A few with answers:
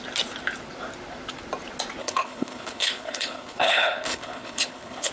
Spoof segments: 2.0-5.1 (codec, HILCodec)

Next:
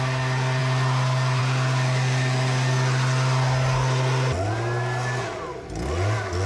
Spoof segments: none